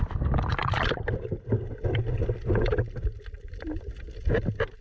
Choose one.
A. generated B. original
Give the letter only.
B